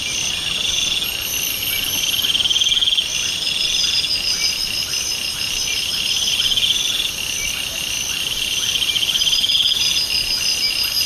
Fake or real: real